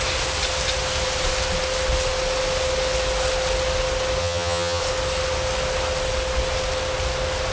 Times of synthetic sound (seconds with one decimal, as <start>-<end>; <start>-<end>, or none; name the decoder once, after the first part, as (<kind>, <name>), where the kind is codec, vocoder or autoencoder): 4.2-4.8 (vocoder, HiFi-GAN)